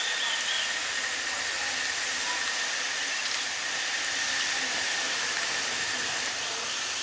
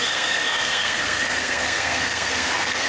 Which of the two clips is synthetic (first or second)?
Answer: second